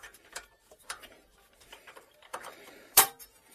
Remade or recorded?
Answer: remade